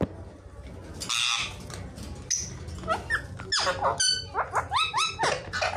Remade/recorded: recorded